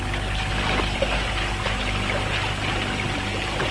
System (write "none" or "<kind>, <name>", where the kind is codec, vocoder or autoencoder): none